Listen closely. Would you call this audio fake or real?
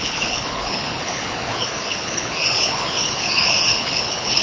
fake